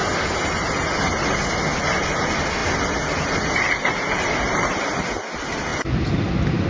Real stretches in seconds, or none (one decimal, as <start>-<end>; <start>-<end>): 0.0-6.7